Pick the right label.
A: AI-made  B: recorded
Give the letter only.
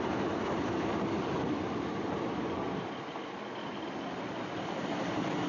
B